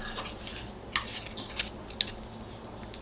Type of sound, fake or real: real